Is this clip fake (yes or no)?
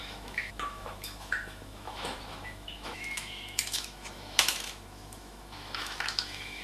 yes